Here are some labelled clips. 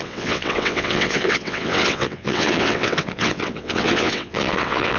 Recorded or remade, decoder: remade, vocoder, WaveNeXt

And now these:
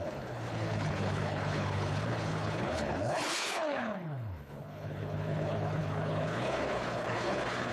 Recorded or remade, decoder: remade, codec, HILCodec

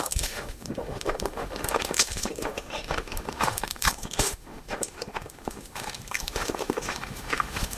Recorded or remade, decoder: remade, autoencoder, DAC-VAE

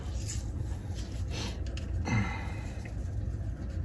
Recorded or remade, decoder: recorded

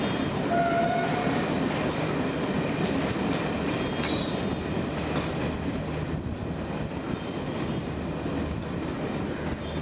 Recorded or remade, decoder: recorded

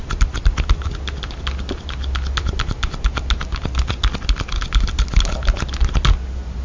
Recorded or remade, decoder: recorded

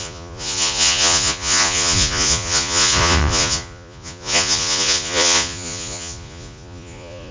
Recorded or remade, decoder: remade, vocoder, Vocos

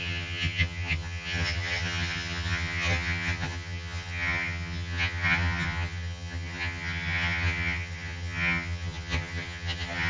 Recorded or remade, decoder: remade, vocoder, HiFi-GAN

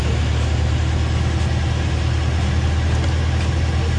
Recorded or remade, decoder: recorded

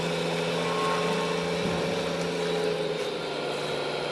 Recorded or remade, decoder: recorded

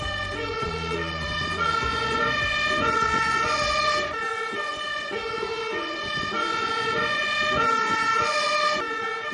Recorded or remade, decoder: remade, vocoder, Vocos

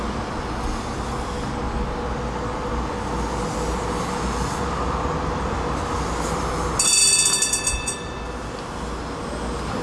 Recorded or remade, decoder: recorded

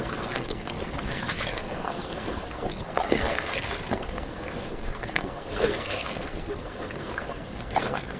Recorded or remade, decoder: remade, codec, SNAC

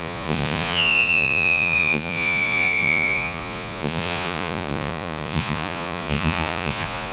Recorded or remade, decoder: remade, vocoder, Vocos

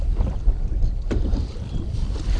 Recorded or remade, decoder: recorded